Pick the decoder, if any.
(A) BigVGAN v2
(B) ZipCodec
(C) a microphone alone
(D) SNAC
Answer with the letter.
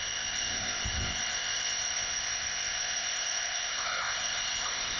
B